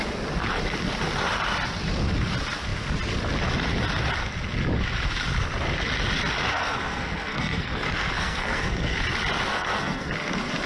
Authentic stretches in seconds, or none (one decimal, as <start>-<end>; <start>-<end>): 0.0-6.5; 9.0-9.5; 10.1-10.7